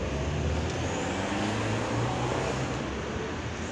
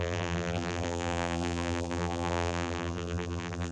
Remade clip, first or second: second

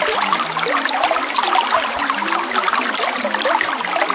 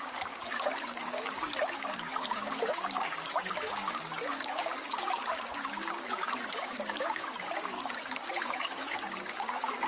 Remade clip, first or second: second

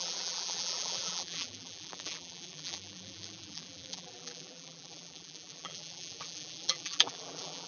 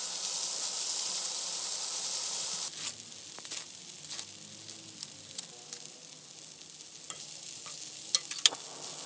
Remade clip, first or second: first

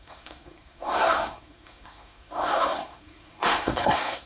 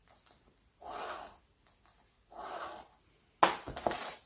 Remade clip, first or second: first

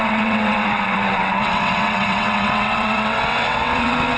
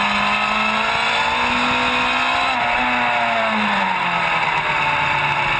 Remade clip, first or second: first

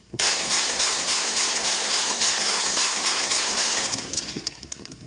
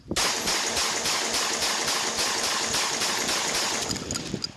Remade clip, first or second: first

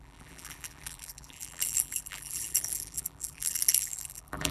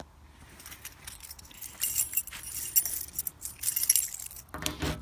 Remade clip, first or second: first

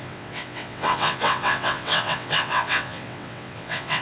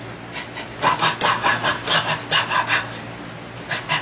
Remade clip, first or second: first